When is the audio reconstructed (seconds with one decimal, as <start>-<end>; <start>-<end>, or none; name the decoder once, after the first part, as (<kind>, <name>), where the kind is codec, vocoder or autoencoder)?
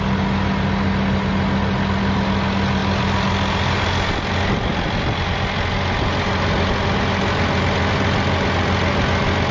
none